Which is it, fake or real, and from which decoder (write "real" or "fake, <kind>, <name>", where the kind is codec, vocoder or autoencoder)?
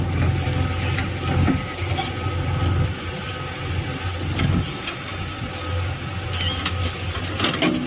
real